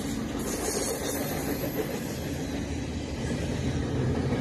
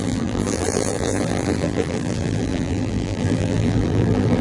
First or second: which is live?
first